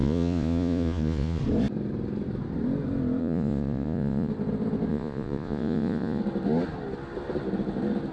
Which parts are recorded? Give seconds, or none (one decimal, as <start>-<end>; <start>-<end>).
1.4-3.2; 4.3-4.9; 6.2-8.1